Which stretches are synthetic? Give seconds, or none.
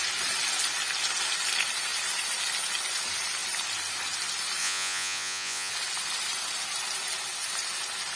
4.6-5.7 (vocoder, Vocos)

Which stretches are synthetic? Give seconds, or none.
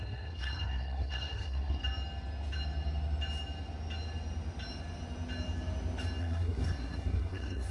0.0-1.8 (codec, SNAC); 6.2-7.7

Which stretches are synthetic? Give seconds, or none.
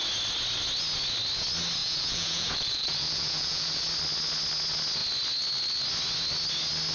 1.8-3.8 (vocoder, Vocos)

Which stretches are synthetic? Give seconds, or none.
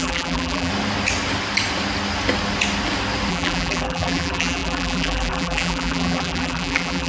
0.0-0.7 (vocoder, BigVGAN v2); 3.3-7.1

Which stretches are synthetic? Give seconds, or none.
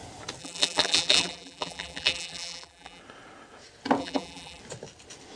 0.4-3.0 (vocoder, BigVGAN v2); 4.0-4.6